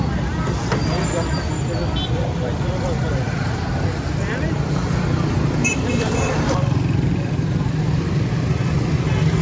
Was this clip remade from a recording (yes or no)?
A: no